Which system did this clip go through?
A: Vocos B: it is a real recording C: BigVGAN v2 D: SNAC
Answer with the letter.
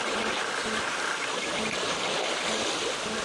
B